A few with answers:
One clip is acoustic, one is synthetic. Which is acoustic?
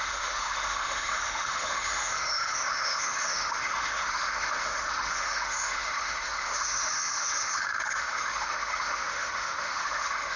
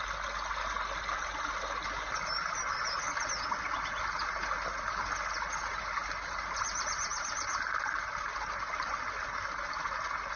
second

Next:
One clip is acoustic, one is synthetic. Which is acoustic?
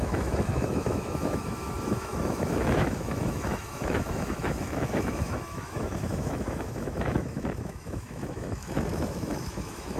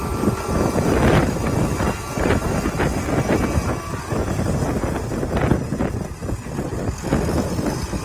second